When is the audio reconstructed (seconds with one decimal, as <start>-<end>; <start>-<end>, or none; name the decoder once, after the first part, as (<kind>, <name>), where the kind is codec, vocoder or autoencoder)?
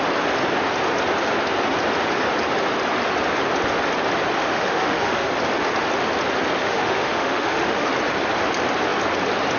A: 4.4-5.3 (autoencoder, DAC-VAE); 6.6-7.9